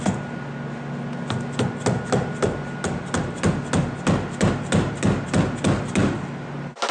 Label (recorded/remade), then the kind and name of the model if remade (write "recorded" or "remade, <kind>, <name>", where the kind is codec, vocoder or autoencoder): recorded